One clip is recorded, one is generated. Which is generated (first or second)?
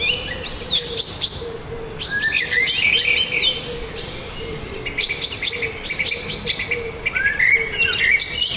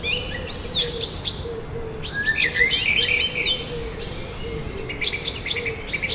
first